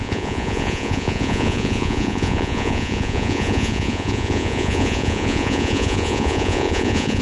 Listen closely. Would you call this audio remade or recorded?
remade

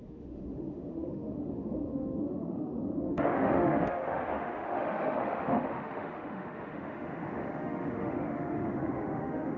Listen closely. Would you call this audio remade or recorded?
remade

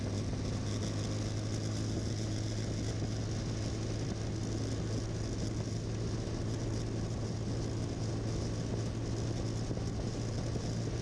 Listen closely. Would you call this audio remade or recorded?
recorded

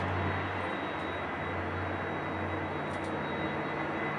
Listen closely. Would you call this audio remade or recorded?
recorded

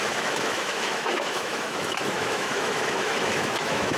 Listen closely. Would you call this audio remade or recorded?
remade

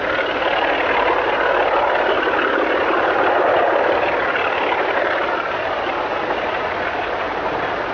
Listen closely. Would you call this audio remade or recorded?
recorded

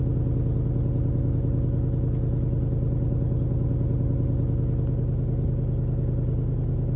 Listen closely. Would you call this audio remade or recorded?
recorded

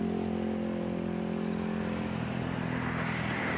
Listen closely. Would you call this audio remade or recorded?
recorded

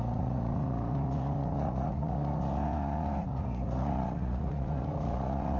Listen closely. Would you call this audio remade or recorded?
remade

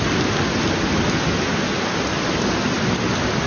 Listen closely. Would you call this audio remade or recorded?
recorded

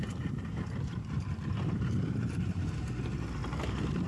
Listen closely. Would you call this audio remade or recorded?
remade